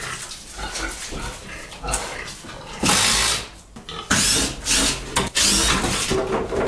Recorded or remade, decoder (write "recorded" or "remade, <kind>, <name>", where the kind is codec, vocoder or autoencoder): recorded